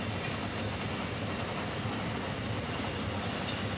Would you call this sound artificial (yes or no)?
no